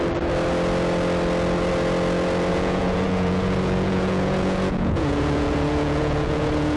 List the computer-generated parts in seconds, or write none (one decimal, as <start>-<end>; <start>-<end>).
2.5-6.8